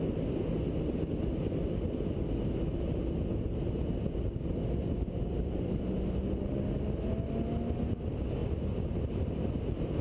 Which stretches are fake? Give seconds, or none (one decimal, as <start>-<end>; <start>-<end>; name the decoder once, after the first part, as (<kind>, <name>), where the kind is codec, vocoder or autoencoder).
none